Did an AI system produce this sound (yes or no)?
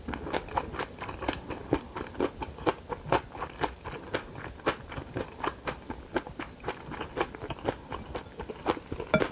no